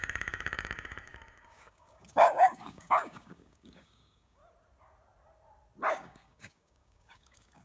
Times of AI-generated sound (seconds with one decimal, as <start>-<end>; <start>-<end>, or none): 0.0-4.4; 5.9-7.6

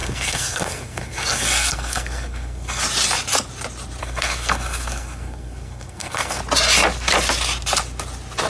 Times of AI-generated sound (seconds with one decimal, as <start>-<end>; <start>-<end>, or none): 0.0-2.8; 4.0-6.4

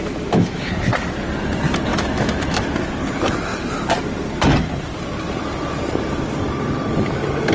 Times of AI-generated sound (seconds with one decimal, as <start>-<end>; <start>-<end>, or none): 0.0-0.7; 1.9-2.9

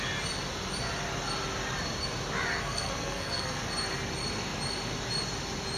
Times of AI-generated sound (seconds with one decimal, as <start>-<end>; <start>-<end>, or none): 2.5-3.6